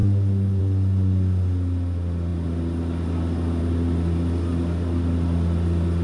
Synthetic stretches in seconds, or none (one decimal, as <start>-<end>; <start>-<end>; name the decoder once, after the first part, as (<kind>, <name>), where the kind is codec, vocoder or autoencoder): none